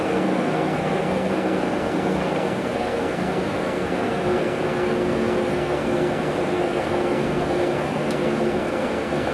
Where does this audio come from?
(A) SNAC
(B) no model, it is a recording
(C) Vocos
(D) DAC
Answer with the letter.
A